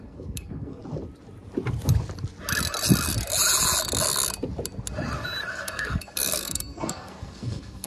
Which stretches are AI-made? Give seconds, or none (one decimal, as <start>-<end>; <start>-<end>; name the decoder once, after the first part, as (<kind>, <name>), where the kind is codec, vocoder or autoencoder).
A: 0.0-0.8 (codec, SNAC); 5.5-7.9